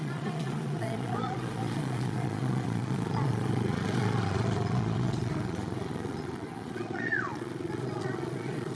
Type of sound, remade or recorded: remade